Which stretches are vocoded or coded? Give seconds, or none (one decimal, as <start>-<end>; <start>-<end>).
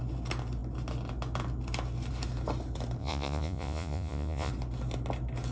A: 3.0-4.5